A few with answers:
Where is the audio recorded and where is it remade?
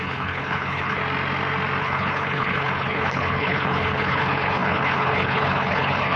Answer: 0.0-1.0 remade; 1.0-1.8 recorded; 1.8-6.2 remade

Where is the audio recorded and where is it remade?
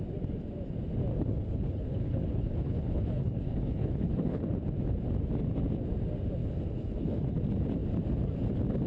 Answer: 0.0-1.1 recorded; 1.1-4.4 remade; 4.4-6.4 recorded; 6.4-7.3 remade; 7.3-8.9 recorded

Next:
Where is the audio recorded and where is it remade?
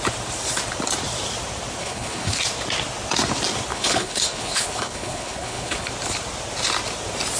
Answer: 0.0-1.8 recorded; 1.8-2.4 remade; 2.4-3.7 recorded; 3.7-5.9 remade; 5.9-7.4 recorded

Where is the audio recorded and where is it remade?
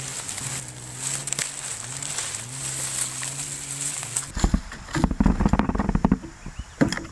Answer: 0.0-7.1 recorded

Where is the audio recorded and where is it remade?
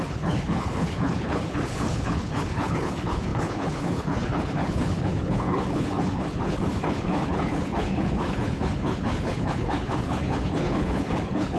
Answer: 0.0-11.6 remade